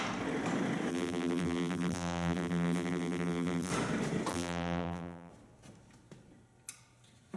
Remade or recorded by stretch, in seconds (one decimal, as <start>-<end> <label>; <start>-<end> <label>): 0.0-0.9 recorded; 0.9-3.7 remade; 3.7-4.3 recorded; 4.3-5.3 remade; 5.3-7.4 recorded